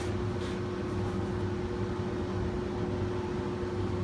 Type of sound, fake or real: real